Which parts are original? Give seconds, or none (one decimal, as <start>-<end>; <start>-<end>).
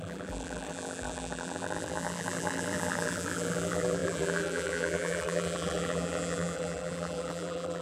none